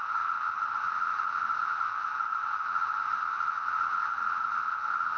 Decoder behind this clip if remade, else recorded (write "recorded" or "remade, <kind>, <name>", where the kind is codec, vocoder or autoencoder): remade, vocoder, HiFi-GAN